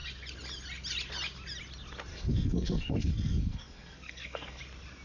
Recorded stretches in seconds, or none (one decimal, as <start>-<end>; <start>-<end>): 0.0-2.1; 4.6-5.0